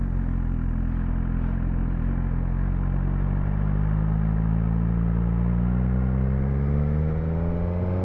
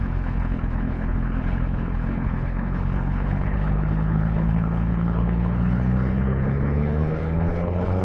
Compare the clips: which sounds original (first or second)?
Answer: first